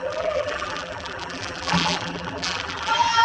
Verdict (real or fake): fake